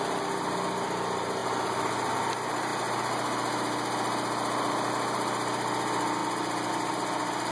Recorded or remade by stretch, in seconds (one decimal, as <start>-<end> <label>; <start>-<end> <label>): 0.0-7.5 recorded

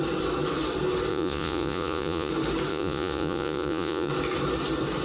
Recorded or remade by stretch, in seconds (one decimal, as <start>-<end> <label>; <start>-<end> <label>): 0.0-1.1 recorded; 1.1-2.3 remade; 2.3-2.7 recorded; 2.7-4.1 remade; 4.1-5.0 recorded

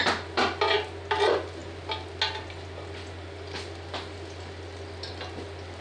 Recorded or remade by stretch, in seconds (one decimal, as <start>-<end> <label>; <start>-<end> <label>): 0.0-5.8 recorded

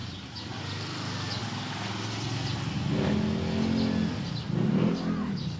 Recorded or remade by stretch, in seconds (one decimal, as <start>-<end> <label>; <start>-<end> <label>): 0.0-5.6 recorded

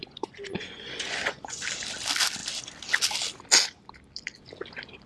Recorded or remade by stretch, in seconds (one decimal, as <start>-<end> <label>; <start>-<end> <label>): 0.0-1.6 remade; 1.6-5.1 recorded